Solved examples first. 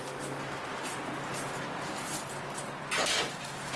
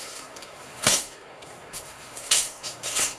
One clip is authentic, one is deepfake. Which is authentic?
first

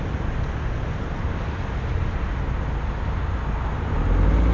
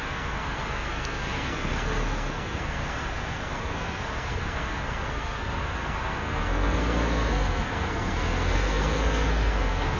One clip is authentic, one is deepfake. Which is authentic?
first